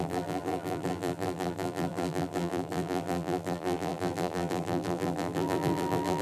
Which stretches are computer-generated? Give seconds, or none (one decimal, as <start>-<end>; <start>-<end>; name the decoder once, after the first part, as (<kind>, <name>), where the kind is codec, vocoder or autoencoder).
0.0-6.2 (vocoder, BigVGAN v2)